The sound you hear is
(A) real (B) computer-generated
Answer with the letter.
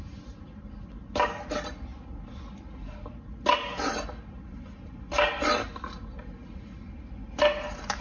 A